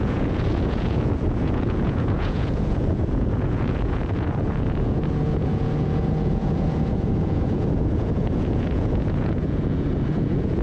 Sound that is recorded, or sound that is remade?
remade